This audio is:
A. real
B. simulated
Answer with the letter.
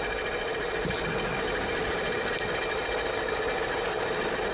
A